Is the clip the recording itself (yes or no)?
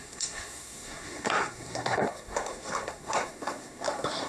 no